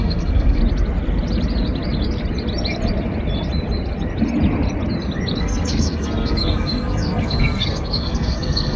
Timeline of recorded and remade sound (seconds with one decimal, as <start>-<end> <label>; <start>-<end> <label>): 0.0-0.6 remade; 0.6-5.4 recorded; 5.4-8.8 remade

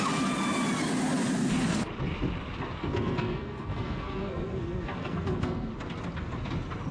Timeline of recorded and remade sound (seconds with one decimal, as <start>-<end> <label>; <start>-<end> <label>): 0.0-2.8 recorded; 2.8-5.7 remade; 5.7-6.9 recorded